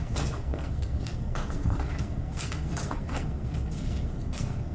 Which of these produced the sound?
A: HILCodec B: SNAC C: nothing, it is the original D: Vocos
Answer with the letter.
B